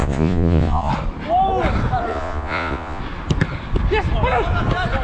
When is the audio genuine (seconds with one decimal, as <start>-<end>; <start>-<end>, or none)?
0.9-2.1; 3.0-5.0